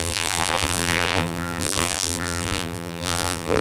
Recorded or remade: remade